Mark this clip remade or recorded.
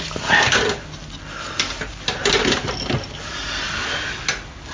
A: recorded